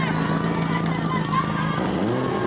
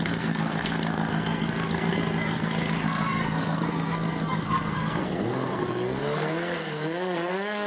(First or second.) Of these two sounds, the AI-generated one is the second